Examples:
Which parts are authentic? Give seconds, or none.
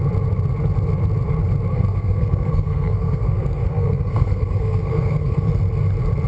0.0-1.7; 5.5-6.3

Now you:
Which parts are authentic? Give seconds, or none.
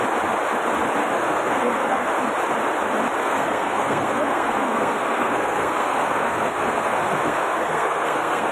0.0-1.0; 2.1-3.2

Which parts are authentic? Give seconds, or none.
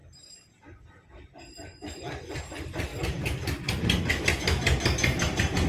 0.0-5.7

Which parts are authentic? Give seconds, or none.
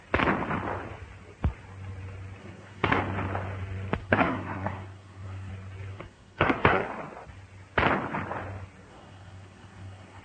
0.0-2.4; 3.0-4.0; 5.5-5.9; 6.9-8.9